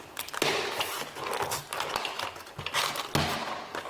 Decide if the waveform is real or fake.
real